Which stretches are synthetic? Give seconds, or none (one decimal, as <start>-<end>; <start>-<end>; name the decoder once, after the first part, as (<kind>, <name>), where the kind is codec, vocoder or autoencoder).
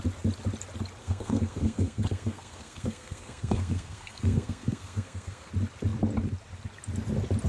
1.0-5.5 (codec, SNAC)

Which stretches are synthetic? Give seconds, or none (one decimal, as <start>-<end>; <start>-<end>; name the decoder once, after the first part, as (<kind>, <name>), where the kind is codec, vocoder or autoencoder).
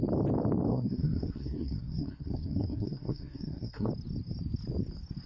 0.7-3.9 (codec, SNAC)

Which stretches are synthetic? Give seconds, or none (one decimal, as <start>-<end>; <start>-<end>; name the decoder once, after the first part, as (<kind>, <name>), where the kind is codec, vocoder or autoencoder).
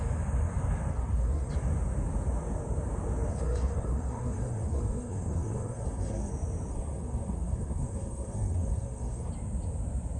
0.9-1.5 (codec, SNAC); 3.3-6.3; 6.7-9.3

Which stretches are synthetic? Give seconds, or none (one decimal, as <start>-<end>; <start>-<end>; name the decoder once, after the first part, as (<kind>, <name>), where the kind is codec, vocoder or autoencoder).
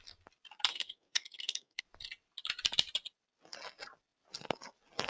0.7-1.8 (codec, SNAC)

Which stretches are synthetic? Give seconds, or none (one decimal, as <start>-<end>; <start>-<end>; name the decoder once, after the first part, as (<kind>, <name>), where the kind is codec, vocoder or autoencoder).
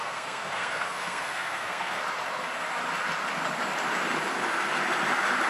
0.0-2.0 (codec, SNAC)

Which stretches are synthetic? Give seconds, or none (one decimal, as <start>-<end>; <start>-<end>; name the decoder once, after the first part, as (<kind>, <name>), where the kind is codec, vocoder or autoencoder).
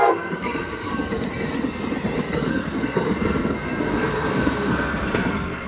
0.0-0.9 (codec, SNAC); 2.5-5.7